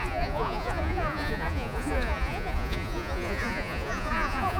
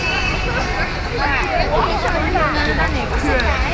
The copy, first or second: first